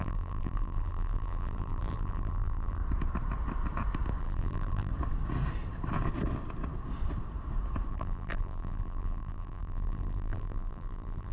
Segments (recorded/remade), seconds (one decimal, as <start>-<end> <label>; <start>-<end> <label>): 0.0-2.8 remade; 2.8-4.2 recorded; 4.2-4.9 remade; 4.9-7.9 recorded; 7.9-11.3 remade